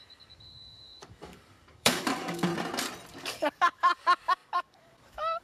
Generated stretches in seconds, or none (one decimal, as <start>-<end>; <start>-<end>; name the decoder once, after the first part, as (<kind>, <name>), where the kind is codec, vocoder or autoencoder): 0.0-2.5 (codec, DAC); 3.1-5.4